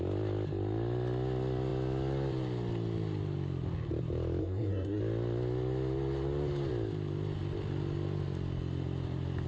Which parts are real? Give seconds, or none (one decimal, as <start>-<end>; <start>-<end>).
0.0-4.4; 5.0-9.5